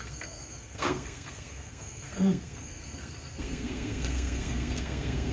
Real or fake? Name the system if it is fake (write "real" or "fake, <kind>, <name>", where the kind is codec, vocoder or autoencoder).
fake, codec, SNAC